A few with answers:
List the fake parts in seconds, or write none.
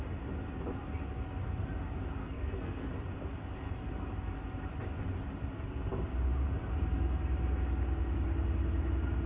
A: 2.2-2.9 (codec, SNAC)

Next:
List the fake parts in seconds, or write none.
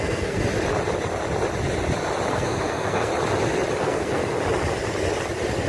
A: 0.0-0.4 (codec, SNAC); 2.3-3.1; 3.8-4.2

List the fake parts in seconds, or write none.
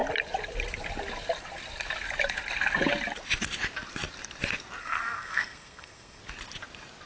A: 4.8-6.2 (codec, SNAC)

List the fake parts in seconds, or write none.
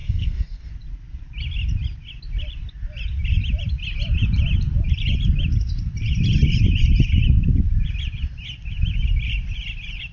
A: 0.0-0.7 (codec, SNAC)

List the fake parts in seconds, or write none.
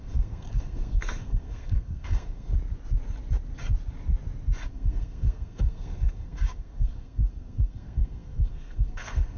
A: 0.0-2.5 (codec, SNAC); 4.7-9.4